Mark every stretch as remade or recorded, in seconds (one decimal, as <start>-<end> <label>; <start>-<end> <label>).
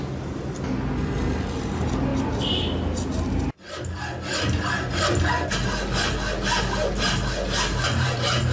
0.0-8.5 recorded